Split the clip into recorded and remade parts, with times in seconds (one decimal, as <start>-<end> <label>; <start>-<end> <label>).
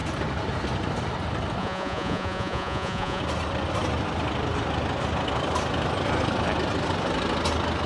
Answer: 0.0-1.6 recorded; 1.6-3.2 remade; 3.2-7.9 recorded